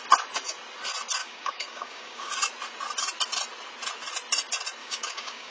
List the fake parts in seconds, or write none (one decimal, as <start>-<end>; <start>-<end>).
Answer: 1.2-2.3; 4.8-5.5